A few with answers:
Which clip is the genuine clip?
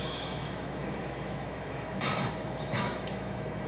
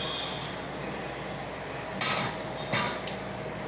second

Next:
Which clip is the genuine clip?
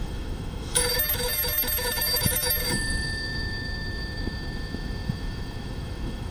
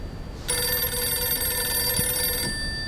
second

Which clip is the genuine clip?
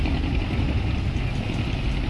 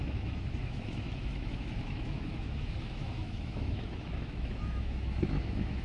first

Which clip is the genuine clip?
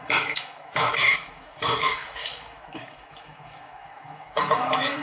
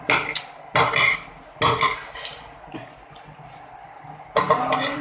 second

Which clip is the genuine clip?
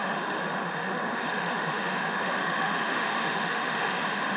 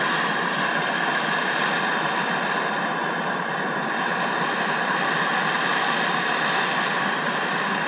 second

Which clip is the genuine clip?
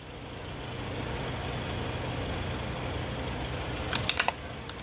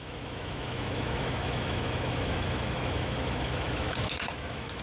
first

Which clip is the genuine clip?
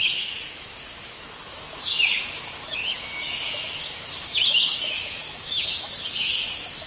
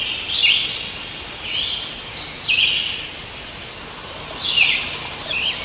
second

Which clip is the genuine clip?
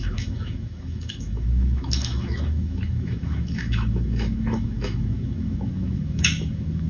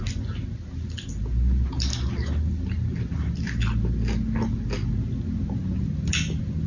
second